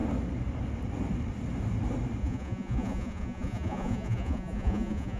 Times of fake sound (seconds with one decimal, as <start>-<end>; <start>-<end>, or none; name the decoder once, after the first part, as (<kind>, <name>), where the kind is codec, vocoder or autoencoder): 2.2-5.2 (vocoder, Vocos)